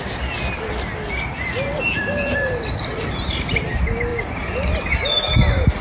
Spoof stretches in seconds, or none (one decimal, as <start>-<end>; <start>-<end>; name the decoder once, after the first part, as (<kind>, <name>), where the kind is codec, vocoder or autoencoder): none